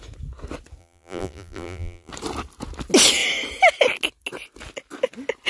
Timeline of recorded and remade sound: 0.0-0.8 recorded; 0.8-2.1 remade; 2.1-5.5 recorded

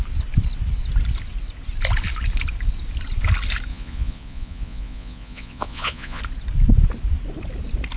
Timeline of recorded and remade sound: 0.0-3.7 recorded; 3.7-6.2 remade; 6.2-8.0 recorded